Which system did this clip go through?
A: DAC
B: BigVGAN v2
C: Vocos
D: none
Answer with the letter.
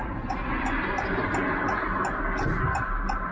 D